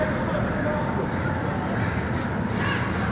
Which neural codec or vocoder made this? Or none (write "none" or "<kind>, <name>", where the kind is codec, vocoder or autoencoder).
none